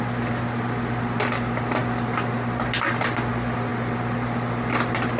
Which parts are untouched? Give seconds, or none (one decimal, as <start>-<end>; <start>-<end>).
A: 0.0-5.2